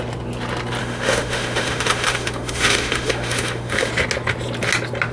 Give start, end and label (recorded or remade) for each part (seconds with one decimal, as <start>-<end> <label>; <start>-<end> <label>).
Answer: 0.0-0.8 recorded; 0.8-3.9 remade; 3.9-5.1 recorded